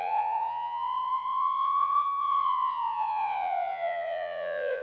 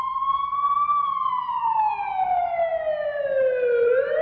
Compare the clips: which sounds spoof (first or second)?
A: first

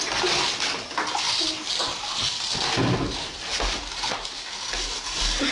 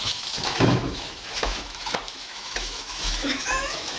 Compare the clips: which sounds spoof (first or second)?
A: second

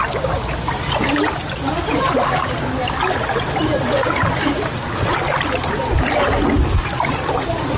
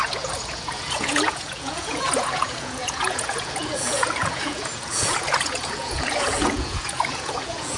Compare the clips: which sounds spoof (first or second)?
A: second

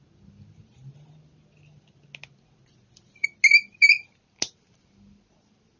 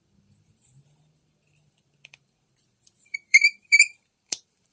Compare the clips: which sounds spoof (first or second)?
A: second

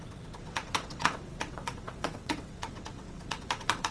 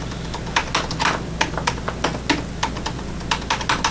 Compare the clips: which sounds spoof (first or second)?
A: first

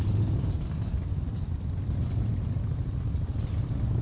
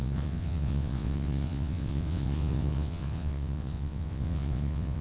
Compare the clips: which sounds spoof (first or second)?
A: second